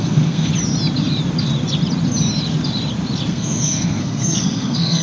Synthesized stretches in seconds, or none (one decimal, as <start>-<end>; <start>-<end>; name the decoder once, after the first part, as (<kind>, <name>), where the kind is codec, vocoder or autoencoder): 0.0-0.5 (codec, SNAC); 3.3-5.0